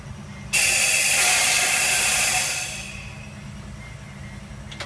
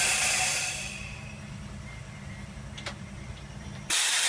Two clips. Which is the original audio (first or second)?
first